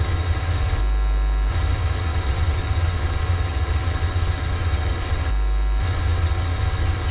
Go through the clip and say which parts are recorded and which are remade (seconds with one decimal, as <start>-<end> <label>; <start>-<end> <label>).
0.0-0.8 remade; 0.8-1.5 recorded; 1.5-5.3 remade; 5.3-5.8 recorded; 5.8-7.1 remade